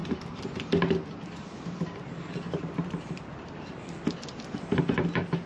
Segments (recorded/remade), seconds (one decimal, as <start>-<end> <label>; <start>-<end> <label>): 0.0-1.1 recorded; 1.1-5.5 remade